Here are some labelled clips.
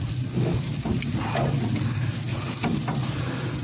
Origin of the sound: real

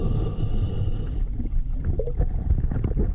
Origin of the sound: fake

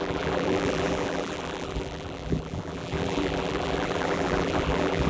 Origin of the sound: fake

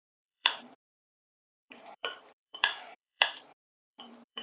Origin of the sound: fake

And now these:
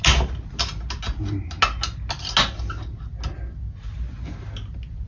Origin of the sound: real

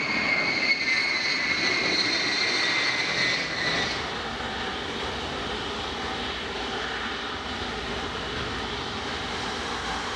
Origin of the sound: fake